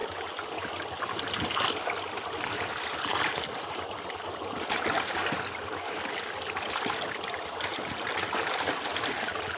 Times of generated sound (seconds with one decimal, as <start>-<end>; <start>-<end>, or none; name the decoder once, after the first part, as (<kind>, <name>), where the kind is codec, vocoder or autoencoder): none